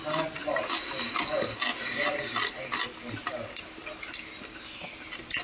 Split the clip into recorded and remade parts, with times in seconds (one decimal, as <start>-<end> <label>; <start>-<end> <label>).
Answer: 0.0-5.4 recorded